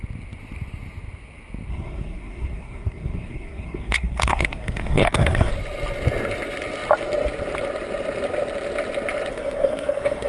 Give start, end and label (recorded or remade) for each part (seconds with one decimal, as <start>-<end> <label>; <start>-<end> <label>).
0.0-1.7 recorded; 1.7-5.5 remade; 5.5-9.3 recorded; 9.3-10.3 remade